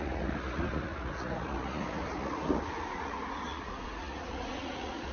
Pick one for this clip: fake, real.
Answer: fake